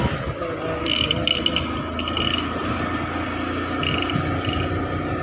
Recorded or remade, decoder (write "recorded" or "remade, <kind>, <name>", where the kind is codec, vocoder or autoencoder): recorded